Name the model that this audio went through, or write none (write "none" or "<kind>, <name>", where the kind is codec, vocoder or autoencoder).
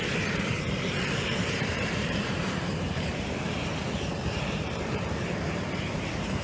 vocoder, BigVGAN v2